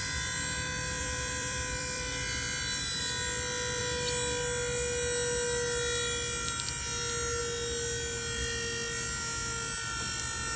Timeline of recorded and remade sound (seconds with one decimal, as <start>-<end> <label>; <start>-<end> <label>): 0.0-3.0 remade; 3.0-10.6 recorded